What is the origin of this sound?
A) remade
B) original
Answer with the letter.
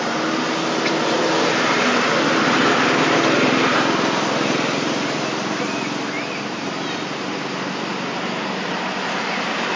B